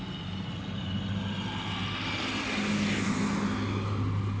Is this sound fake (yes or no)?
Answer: no